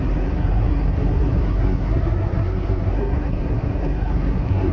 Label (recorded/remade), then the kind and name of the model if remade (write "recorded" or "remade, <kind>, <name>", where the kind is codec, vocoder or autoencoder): remade, codec, SNAC